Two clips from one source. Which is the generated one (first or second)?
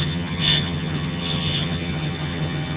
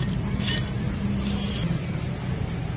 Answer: first